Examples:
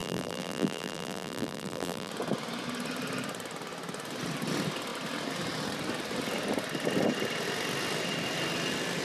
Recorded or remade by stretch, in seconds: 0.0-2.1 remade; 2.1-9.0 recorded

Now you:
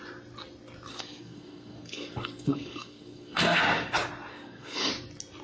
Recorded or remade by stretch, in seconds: 0.0-0.9 recorded; 0.9-3.6 remade; 3.6-4.3 recorded; 4.3-4.9 remade; 4.9-5.4 recorded

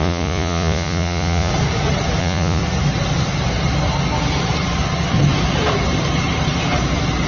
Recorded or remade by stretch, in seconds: 0.0-1.5 remade; 1.5-2.2 recorded; 2.2-2.6 remade; 2.6-7.3 recorded

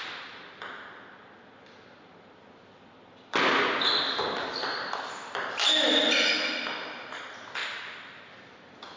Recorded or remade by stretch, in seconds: 0.0-4.6 recorded; 4.6-5.1 remade; 5.1-7.6 recorded; 7.6-8.3 remade; 8.3-9.0 recorded

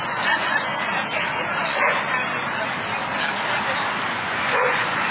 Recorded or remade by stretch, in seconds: 0.0-0.7 remade; 0.7-1.6 recorded; 1.6-2.2 remade; 2.2-4.1 recorded; 4.1-5.1 remade

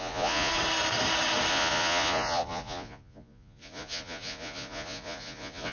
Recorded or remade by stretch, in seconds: 0.0-0.5 remade; 0.5-1.5 recorded; 1.5-5.7 remade

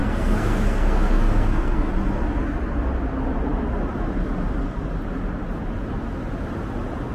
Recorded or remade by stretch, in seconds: 0.0-1.9 remade; 1.9-7.1 recorded

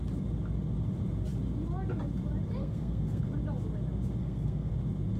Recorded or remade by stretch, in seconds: 0.0-2.6 recorded; 2.6-3.2 remade; 3.2-4.2 recorded; 4.2-4.7 remade; 4.7-5.2 recorded